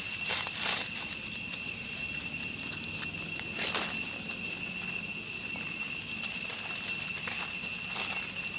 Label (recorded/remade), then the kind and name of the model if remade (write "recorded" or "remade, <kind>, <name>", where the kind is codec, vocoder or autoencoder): recorded